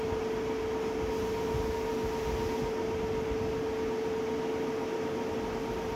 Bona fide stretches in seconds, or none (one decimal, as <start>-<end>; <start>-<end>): 0.0-6.0